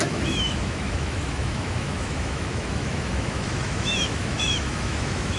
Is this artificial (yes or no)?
yes